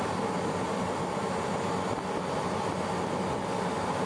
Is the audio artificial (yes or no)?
no